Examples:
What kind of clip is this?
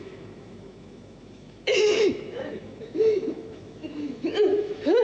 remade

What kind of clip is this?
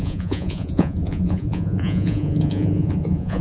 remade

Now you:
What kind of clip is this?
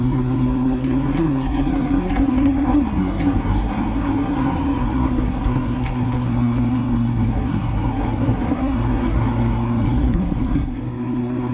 remade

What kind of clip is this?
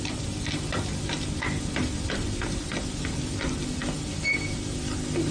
recorded